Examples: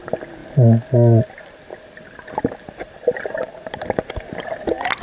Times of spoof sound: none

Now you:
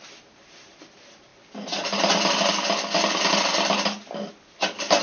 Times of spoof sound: none

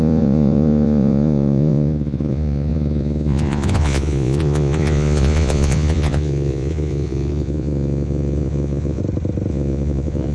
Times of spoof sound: 0.0-9.0 (vocoder, Vocos); 9.5-10.3